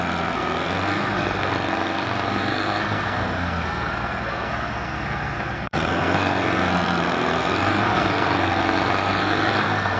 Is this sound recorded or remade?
remade